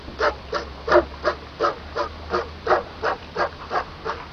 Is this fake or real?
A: real